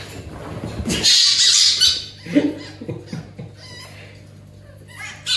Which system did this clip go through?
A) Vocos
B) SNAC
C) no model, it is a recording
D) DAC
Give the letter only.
C